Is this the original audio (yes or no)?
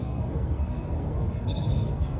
no